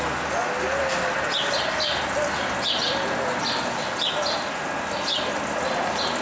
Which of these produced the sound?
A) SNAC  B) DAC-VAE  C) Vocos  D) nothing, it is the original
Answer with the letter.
D